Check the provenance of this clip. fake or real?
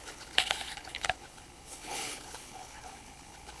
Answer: fake